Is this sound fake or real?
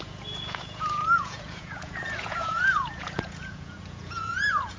fake